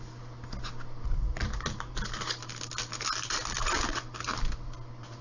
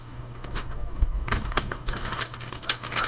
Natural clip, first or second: first